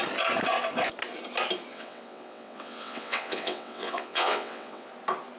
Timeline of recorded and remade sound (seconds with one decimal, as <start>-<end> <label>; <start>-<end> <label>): 0.0-1.7 recorded; 1.7-4.9 remade; 4.9-5.4 recorded

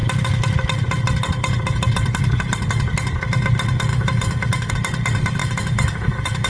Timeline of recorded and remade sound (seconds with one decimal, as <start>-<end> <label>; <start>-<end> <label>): 0.0-3.9 recorded; 3.9-4.7 remade; 4.7-5.4 recorded; 5.4-6.5 remade

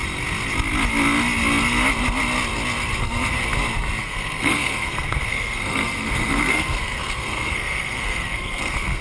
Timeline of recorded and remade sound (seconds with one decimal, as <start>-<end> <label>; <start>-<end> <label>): 0.0-3.0 recorded; 3.0-3.4 remade; 3.4-4.0 recorded; 4.0-9.0 remade

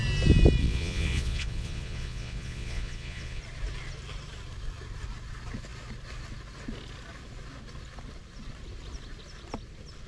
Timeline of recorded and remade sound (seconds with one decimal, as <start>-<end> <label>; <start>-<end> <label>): 0.0-0.6 recorded; 0.6-3.4 remade; 3.4-10.1 recorded

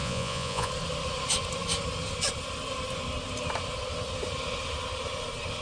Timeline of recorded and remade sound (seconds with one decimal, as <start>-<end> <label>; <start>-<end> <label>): 0.0-0.7 remade; 0.7-5.6 recorded

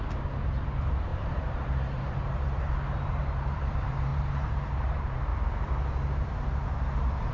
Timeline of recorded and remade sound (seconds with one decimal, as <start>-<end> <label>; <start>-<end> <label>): 0.0-5.3 remade; 5.3-7.3 recorded

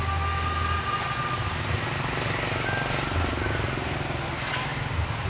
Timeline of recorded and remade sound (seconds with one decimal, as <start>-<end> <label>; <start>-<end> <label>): 0.0-5.3 recorded

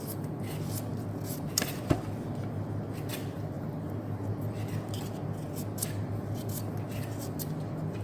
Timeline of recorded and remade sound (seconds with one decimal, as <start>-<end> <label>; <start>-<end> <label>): 0.0-8.0 recorded